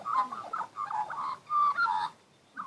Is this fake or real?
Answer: real